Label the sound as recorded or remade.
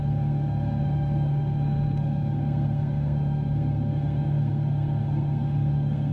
remade